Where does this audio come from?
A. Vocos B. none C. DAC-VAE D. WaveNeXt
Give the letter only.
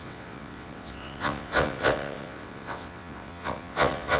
D